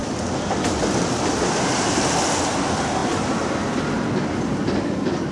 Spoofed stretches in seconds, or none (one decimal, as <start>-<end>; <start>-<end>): none